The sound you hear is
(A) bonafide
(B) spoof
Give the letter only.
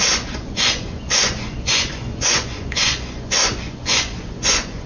B